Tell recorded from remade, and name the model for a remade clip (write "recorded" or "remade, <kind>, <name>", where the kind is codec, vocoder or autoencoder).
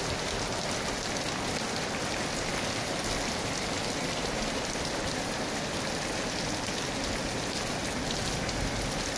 recorded